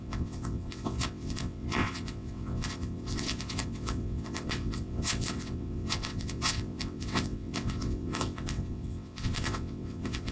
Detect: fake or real fake